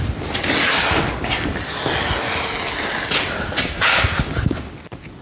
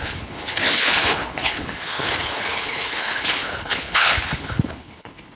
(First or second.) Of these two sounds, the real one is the first